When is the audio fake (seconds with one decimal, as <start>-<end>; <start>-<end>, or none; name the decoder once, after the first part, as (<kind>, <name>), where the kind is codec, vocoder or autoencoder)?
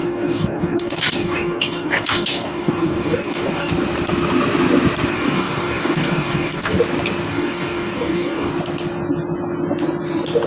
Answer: 0.0-3.7 (codec, DAC); 5.1-6.8; 7.3-8.5